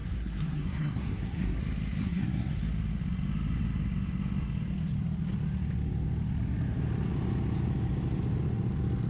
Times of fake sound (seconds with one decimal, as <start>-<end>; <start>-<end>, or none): 0.0-1.6; 2.0-2.6